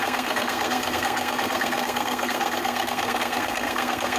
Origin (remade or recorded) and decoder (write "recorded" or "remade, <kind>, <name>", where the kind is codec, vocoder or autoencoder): remade, codec, SNAC